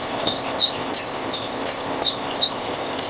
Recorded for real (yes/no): no